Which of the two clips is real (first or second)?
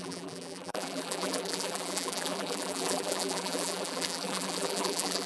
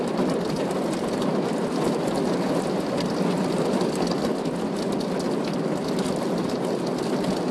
second